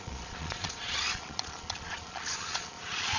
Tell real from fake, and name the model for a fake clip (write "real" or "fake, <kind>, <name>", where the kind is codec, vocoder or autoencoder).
fake, vocoder, Vocos